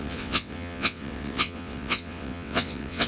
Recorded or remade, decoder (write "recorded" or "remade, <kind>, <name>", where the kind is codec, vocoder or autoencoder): remade, vocoder, WaveNeXt